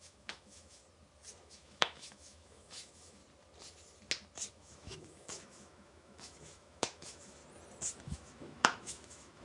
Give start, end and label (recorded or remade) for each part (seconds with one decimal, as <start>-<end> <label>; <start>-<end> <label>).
0.0-0.8 remade; 0.8-1.4 recorded; 1.4-3.2 remade; 3.2-4.5 recorded; 4.5-7.4 remade; 7.4-8.0 recorded; 8.0-9.4 remade